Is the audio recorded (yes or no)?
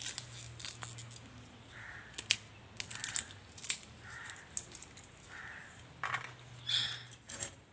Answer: yes